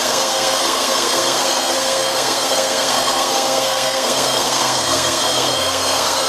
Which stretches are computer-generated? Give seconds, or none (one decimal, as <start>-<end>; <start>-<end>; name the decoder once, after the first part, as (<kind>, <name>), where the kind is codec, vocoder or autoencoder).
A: 0.0-6.3 (codec, SNAC)